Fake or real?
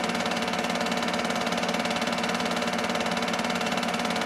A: real